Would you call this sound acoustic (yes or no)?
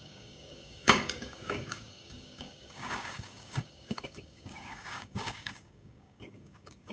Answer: no